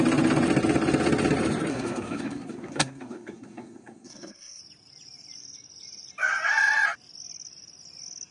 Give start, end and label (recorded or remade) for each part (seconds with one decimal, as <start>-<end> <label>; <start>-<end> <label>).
0.0-1.7 recorded; 1.7-4.6 remade; 4.6-8.3 recorded